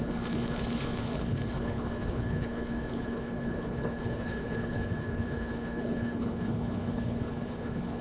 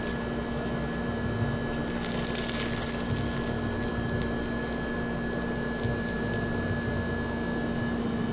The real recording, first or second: second